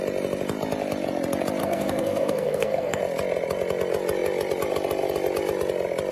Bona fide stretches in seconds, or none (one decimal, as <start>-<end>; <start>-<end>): 0.0-1.6; 3.0-6.1